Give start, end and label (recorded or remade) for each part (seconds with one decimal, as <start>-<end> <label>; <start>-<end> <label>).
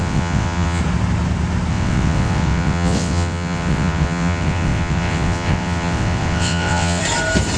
0.0-0.8 remade; 0.8-1.7 recorded; 1.7-7.0 remade; 7.0-7.6 recorded